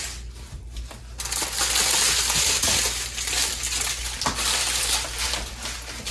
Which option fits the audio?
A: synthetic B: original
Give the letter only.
B